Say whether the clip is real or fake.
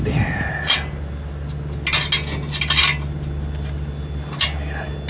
real